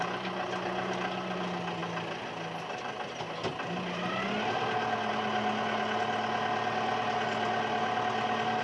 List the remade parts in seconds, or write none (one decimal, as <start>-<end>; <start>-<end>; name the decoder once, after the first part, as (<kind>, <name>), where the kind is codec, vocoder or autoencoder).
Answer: none